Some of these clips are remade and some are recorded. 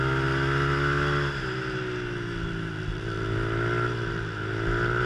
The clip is recorded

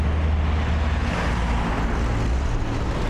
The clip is recorded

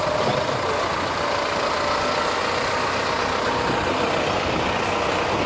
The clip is recorded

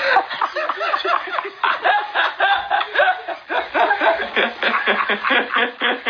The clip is recorded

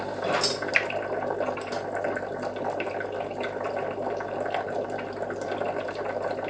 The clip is recorded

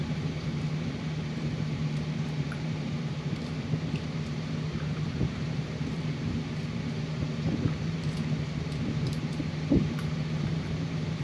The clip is remade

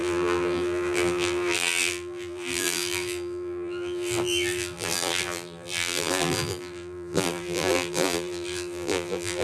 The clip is remade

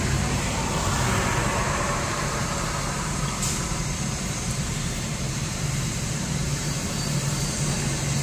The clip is remade